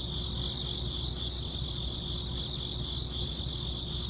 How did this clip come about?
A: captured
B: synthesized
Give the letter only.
A